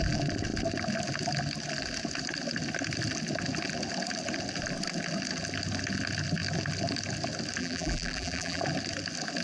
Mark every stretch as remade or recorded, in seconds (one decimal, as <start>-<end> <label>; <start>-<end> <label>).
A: 0.0-7.6 recorded; 7.6-8.6 remade; 8.6-9.4 recorded